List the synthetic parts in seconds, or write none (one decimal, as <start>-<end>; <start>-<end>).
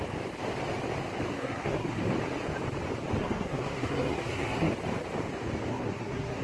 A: 1.3-2.0; 3.2-4.7; 5.7-6.4